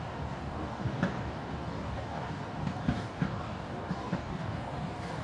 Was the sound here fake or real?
fake